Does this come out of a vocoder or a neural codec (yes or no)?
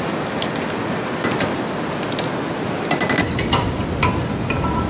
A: no